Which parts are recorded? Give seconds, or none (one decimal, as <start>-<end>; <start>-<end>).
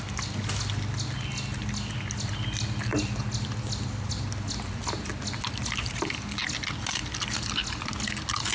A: 0.0-2.9; 4.1-8.5